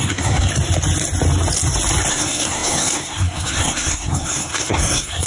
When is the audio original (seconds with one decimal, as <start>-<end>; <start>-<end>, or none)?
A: 0.5-2.1